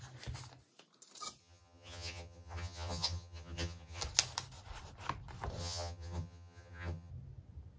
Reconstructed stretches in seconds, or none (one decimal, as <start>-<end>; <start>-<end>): 1.4-4.0; 5.6-7.1